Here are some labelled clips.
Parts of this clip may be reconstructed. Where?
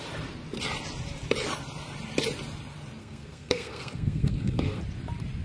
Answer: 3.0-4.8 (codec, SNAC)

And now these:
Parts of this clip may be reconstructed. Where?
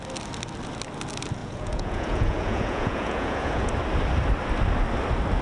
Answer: 1.4-3.7 (vocoder, Vocos)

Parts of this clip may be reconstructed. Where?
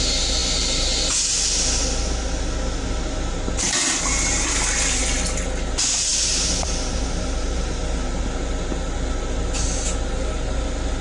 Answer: none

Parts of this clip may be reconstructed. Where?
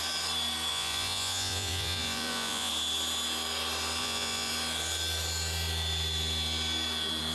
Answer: 0.7-2.7 (vocoder, Vocos); 4.0-4.5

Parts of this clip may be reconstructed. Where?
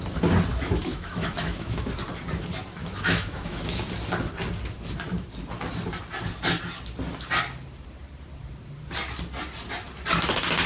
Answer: 0.5-1.9 (autoencoder, DAC-VAE); 2.8-3.9